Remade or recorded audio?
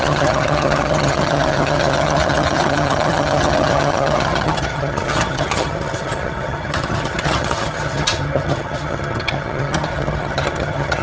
remade